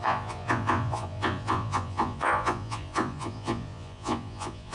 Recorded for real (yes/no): no